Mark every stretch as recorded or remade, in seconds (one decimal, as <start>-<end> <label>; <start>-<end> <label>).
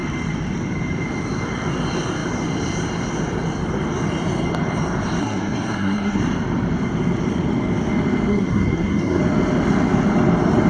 0.0-5.2 recorded; 5.2-6.2 remade; 6.2-8.3 recorded; 8.3-9.2 remade; 9.2-10.7 recorded